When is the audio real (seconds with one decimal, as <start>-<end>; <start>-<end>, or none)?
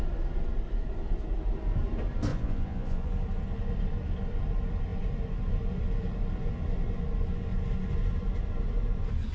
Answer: 0.0-2.3; 3.1-9.3